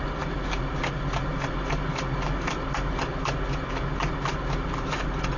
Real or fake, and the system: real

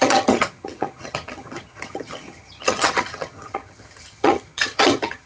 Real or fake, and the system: fake, vocoder, HiFi-GAN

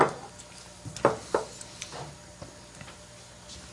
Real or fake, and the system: real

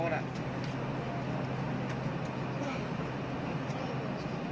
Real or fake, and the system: real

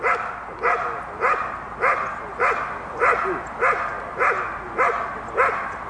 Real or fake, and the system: real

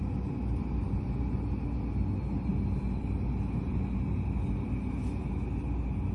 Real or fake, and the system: real